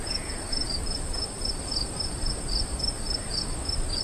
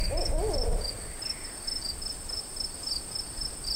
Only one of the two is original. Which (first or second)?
second